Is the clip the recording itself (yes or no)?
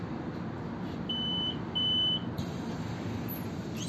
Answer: yes